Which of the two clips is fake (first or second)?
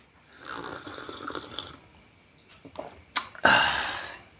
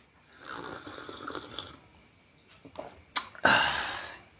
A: first